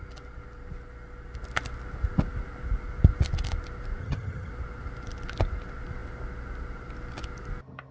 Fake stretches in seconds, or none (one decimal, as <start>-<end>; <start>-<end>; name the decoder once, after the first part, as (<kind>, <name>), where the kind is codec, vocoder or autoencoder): 4.0-4.5 (vocoder, HiFi-GAN)